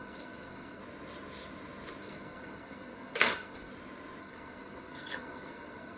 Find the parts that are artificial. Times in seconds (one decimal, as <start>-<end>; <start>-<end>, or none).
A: 0.0-0.8; 2.0-3.7; 4.2-6.0